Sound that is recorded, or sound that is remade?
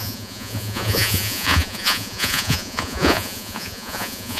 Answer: remade